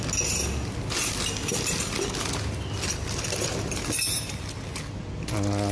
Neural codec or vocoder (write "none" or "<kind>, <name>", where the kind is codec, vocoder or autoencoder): none